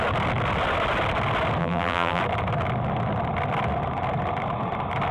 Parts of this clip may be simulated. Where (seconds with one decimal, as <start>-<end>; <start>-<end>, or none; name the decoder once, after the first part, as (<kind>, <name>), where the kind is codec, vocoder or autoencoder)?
1.6-2.2 (vocoder, BigVGAN v2)